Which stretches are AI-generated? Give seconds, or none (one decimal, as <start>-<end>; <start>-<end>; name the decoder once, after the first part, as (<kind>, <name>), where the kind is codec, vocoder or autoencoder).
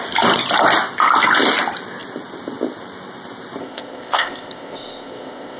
3.6-5.6 (codec, ZipCodec)